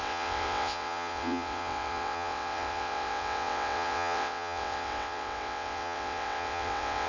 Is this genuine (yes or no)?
no